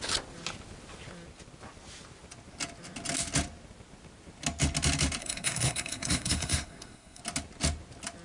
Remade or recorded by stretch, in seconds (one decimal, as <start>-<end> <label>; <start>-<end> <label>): 0.0-5.2 recorded; 5.2-7.2 remade; 7.2-8.2 recorded